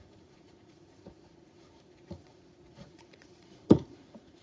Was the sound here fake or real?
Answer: fake